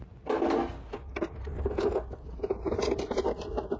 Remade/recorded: recorded